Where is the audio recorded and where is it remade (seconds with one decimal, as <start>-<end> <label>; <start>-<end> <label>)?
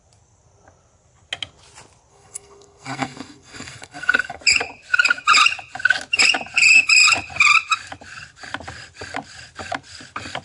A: 0.0-2.1 recorded; 2.1-4.4 remade; 4.4-10.4 recorded